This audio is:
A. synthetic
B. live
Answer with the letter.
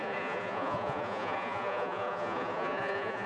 A